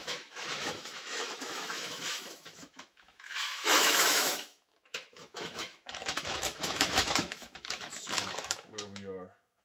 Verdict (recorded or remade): remade